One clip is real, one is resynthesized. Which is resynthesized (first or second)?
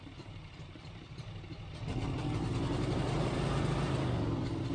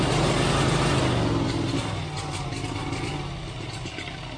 first